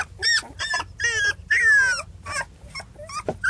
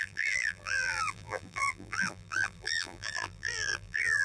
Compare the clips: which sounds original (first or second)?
first